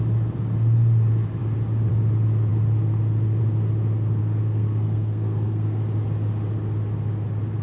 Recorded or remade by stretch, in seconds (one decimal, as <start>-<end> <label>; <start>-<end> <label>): 0.0-4.2 recorded; 4.2-5.8 remade; 5.8-7.6 recorded